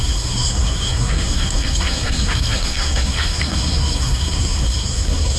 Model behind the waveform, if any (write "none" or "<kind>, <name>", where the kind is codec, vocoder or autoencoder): codec, SNAC